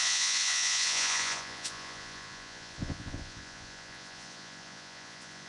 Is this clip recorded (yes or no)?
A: no